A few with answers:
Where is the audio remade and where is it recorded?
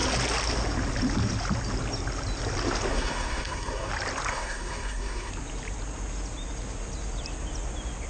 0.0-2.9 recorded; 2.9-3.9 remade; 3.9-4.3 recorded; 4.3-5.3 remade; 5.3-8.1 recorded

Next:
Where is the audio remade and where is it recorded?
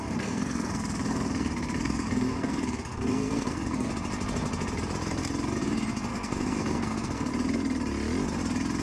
0.0-3.9 remade; 3.9-6.1 recorded; 6.1-7.3 remade; 7.3-8.8 recorded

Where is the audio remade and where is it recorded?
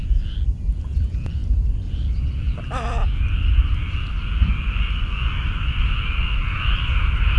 0.0-7.4 recorded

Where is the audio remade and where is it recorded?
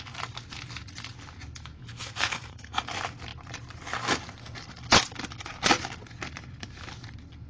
0.0-1.9 recorded; 1.9-2.8 remade; 2.8-7.5 recorded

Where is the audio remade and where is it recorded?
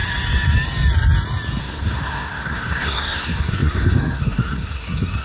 0.0-1.6 recorded; 1.6-5.2 remade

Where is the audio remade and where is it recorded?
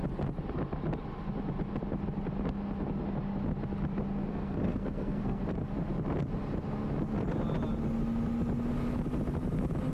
0.0-4.3 recorded; 4.3-5.4 remade; 5.4-9.9 recorded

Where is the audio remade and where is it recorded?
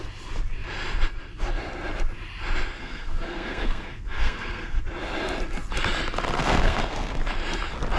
0.0-2.8 recorded; 2.8-4.8 remade; 4.8-6.4 recorded; 6.4-7.2 remade; 7.2-8.0 recorded